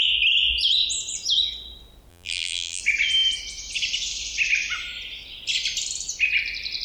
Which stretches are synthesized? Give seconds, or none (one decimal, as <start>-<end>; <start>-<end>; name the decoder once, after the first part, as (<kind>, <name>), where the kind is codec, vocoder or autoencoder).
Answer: 2.1-2.8 (vocoder, BigVGAN v2)